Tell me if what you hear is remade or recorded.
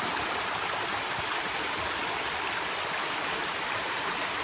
recorded